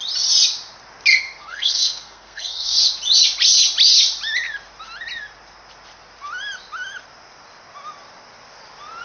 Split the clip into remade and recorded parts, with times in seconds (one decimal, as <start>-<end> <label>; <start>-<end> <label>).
0.0-1.1 recorded; 1.1-2.8 remade; 2.8-9.0 recorded